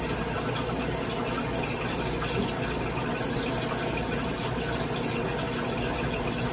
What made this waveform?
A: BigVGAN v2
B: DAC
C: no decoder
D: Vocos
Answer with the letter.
C